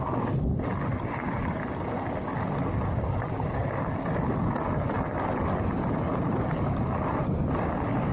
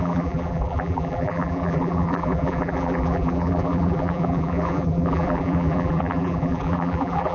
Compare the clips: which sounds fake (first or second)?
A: second